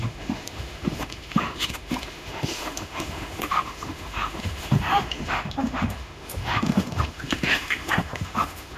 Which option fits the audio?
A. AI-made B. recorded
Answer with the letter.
A